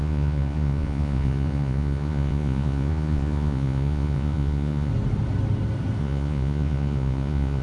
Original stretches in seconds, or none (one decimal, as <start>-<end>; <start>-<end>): 4.9-6.0